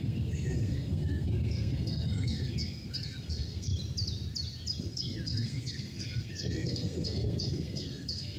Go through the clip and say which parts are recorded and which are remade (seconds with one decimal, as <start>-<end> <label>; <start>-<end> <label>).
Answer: 0.0-3.7 remade; 3.7-4.9 recorded; 4.9-8.4 remade